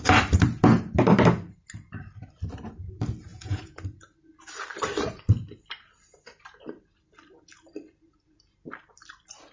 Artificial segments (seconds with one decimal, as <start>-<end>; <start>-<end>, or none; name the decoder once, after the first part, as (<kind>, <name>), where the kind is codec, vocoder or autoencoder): 3.3-3.8 (vocoder, Vocos)